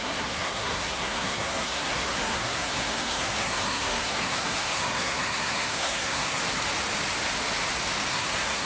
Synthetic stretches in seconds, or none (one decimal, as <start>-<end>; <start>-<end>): 0.0-6.4; 8.1-8.7